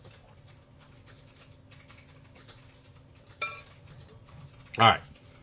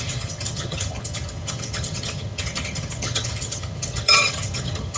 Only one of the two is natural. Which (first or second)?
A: first